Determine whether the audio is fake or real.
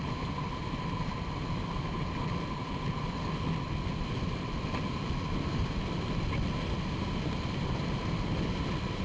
real